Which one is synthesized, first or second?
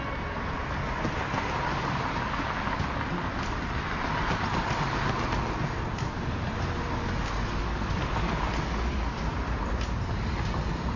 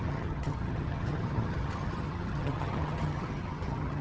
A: second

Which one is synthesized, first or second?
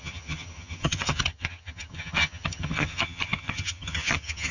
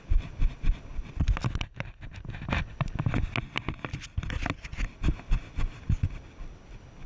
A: first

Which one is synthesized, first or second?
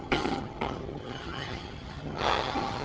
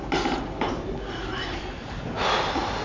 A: first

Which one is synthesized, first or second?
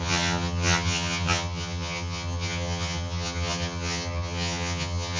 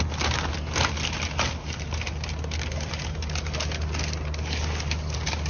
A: first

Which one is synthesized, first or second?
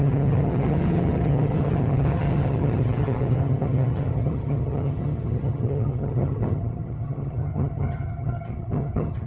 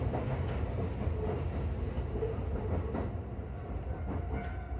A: first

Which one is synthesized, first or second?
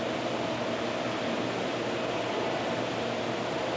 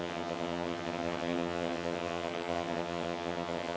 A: second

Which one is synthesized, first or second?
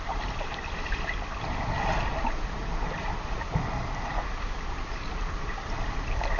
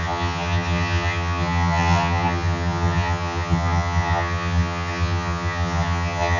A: second